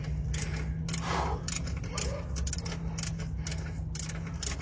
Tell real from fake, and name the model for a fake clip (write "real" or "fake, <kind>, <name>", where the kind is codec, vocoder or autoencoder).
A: real